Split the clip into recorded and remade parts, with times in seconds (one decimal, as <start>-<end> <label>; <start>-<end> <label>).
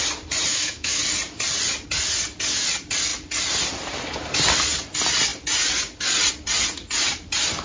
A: 0.0-0.5 recorded; 0.5-1.0 remade; 1.0-7.6 recorded